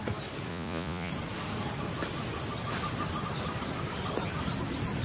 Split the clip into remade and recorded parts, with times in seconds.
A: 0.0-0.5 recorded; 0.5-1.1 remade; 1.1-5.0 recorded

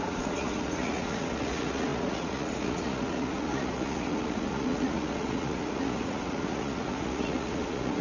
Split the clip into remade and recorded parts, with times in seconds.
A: 0.0-8.0 remade

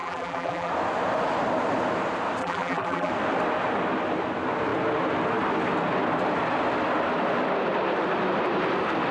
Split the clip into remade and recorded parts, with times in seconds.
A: 0.0-0.7 remade; 0.7-2.4 recorded; 2.4-3.1 remade; 3.1-9.1 recorded